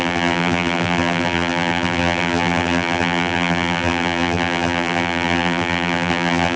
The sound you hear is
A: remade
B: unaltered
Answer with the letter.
A